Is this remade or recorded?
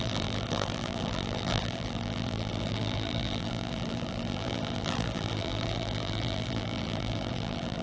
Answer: remade